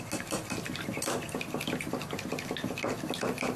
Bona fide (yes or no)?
yes